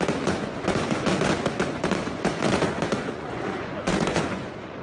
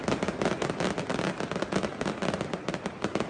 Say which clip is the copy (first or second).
first